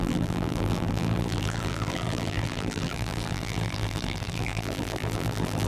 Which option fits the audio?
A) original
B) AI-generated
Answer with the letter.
B